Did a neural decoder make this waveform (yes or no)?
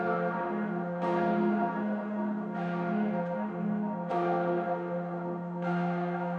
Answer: yes